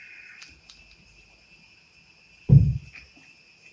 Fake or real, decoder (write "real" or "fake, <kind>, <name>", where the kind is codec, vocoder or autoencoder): real